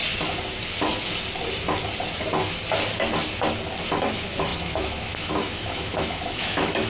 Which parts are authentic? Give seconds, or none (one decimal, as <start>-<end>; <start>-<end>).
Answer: 0.0-4.1